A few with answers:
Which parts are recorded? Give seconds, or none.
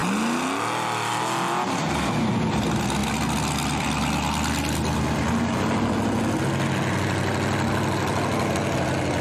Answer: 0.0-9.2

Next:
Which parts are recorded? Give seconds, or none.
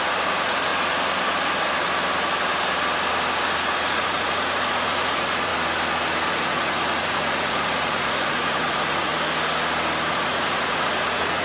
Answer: 0.7-3.7; 5.5-6.3; 9.1-10.1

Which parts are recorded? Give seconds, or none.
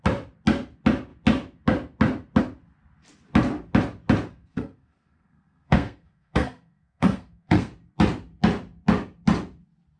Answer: 0.0-4.3; 7.7-10.0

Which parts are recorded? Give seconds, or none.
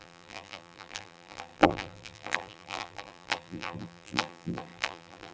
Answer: none